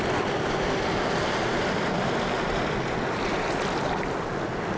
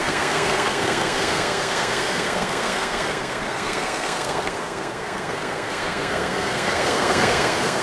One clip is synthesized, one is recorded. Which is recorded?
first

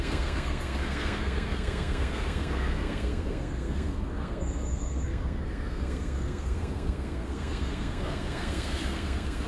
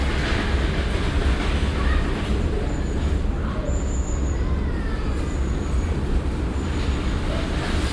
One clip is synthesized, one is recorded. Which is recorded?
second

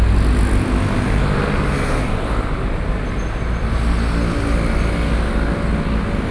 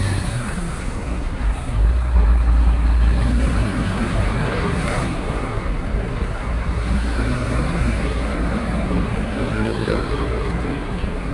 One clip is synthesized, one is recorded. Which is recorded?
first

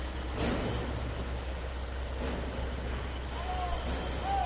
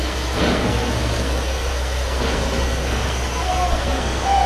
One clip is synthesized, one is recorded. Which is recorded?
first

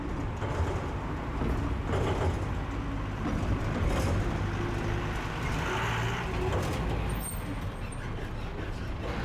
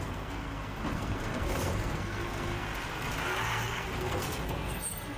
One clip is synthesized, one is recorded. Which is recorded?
first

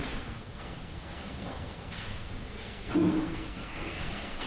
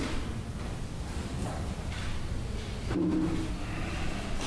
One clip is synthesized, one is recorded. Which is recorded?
second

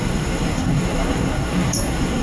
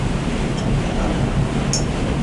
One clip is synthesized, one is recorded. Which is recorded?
second